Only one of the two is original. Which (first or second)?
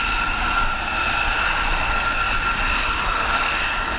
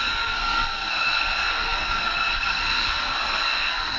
first